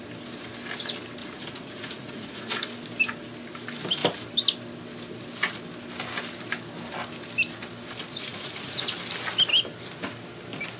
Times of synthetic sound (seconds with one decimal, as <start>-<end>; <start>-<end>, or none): 1.2-2.5; 8.1-8.9

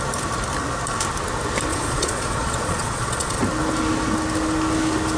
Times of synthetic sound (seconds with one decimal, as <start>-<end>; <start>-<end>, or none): 1.7-3.4